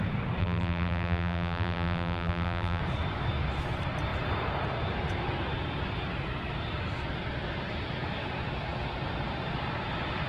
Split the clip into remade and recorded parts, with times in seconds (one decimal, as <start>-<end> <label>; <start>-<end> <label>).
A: 0.0-0.4 recorded; 0.4-2.8 remade; 2.8-10.3 recorded